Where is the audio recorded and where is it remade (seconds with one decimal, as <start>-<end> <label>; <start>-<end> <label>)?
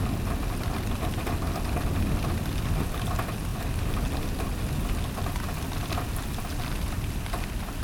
0.0-7.8 recorded